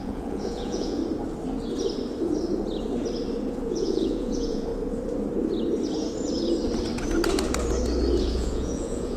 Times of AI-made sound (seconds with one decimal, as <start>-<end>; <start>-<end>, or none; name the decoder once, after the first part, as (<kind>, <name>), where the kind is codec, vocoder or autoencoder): 0.0-1.0 (vocoder, Vocos); 3.5-4.7; 8.2-9.2